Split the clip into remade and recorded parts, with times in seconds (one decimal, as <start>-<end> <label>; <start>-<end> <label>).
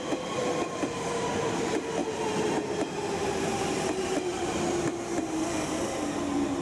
0.0-6.6 recorded